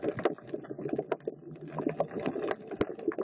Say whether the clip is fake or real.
real